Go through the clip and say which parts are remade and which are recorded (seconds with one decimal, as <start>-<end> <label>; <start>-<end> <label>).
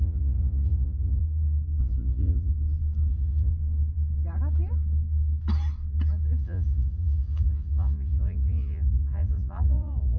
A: 0.0-1.2 remade; 1.2-1.8 recorded; 1.8-2.5 remade; 2.5-3.1 recorded; 3.1-3.5 remade; 3.5-6.4 recorded; 6.4-10.2 remade